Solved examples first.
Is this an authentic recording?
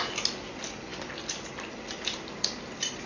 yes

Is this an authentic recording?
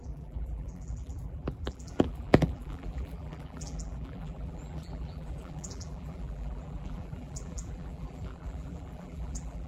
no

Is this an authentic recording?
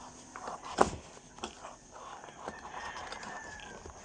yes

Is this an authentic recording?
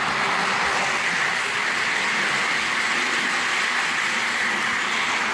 yes